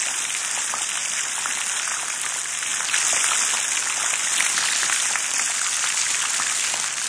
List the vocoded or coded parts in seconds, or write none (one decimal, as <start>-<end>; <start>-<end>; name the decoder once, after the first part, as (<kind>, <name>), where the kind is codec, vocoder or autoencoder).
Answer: none